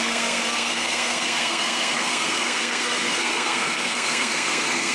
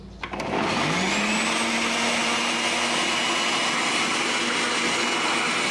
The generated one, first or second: first